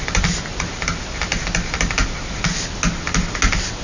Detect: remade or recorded recorded